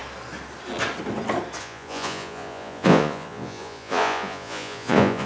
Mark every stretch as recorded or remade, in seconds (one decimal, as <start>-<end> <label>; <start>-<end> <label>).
0.0-1.6 recorded; 1.6-5.3 remade